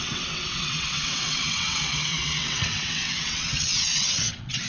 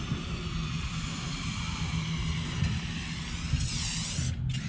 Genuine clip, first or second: second